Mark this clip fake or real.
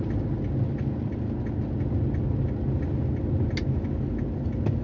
real